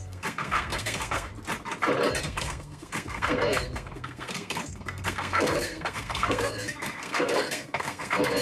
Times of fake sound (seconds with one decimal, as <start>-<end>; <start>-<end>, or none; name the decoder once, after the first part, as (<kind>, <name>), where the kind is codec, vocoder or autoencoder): 0.0-1.3 (codec, SNAC); 2.2-8.4